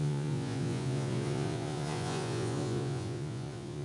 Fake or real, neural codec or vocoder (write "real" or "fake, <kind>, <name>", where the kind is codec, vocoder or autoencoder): fake, vocoder, Vocos